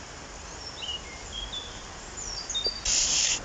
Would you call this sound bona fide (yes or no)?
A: yes